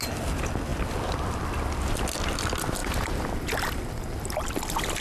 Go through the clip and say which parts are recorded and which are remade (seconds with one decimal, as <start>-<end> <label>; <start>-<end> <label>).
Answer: 0.0-0.7 recorded; 0.7-1.5 remade; 1.5-5.0 recorded